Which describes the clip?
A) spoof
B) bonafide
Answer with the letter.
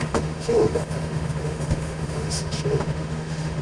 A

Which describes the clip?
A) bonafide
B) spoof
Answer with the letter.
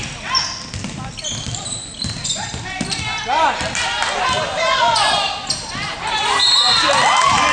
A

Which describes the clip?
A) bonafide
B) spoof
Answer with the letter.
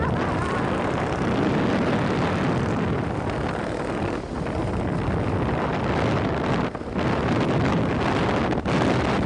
A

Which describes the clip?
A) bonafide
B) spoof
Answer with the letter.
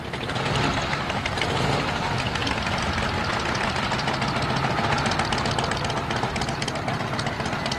A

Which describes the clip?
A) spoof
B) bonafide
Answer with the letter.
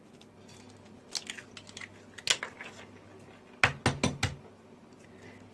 B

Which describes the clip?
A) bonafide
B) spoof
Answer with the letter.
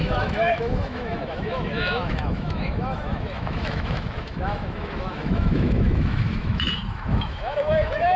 B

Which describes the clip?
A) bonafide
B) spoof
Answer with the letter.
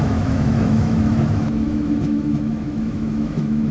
B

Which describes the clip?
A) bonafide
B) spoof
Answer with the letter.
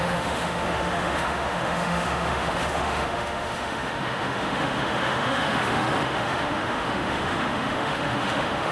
B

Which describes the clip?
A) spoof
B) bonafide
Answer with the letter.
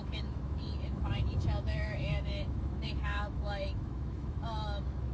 A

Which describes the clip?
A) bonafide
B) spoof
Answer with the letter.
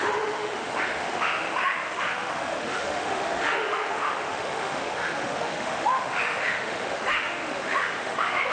B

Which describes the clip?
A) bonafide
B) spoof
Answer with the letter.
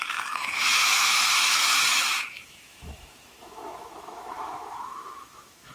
B